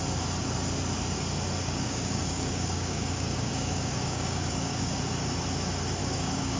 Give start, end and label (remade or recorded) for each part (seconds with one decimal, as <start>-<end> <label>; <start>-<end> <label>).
0.0-1.6 recorded; 1.6-5.0 remade; 5.0-6.0 recorded; 6.0-6.6 remade